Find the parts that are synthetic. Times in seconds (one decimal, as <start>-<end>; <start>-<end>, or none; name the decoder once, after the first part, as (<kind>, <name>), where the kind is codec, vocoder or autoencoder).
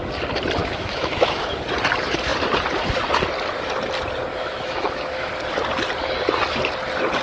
0.6-1.6 (autoencoder, DAC-VAE); 4.3-5.3